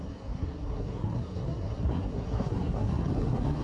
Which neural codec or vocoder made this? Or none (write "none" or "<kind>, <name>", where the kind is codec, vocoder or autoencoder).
codec, SNAC